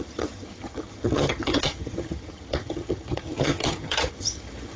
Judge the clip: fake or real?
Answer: fake